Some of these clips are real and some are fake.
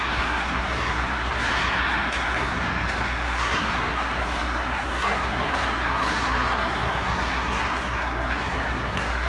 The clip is fake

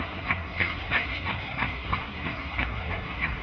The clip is fake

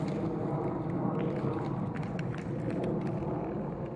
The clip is real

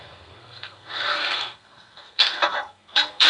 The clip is fake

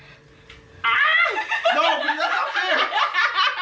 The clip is real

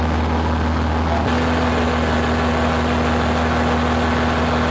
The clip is real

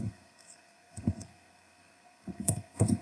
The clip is fake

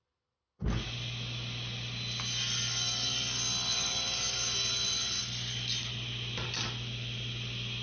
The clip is real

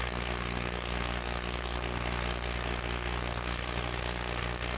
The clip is fake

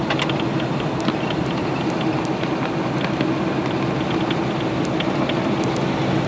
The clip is real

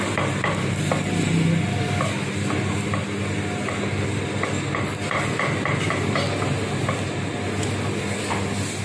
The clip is real